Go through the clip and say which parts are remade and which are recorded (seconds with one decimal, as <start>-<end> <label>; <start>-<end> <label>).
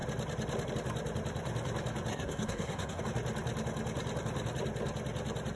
0.0-2.1 recorded; 2.1-3.0 remade; 3.0-5.6 recorded